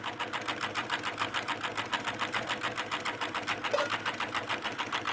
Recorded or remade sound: recorded